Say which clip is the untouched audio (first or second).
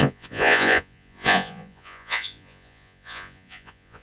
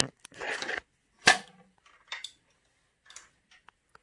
second